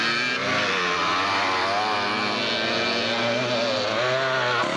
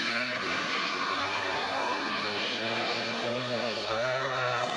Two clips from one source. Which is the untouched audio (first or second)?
first